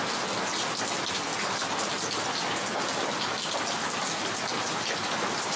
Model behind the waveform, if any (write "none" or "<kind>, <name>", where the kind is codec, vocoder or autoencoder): none